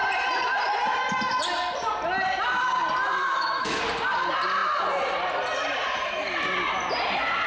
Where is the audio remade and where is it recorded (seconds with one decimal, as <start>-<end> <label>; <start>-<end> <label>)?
0.0-3.2 recorded; 3.2-3.8 remade; 3.8-7.5 recorded